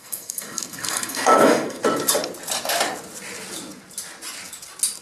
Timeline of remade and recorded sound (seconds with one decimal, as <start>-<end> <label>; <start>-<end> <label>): 0.0-1.8 remade; 1.8-5.0 recorded